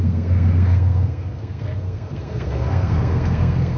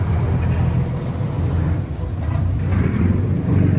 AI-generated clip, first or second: first